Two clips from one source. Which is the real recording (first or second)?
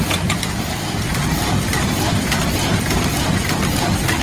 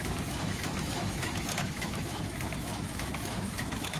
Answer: first